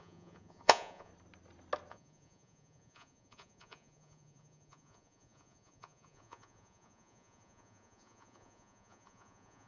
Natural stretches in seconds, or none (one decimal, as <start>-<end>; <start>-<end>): 1.1-1.9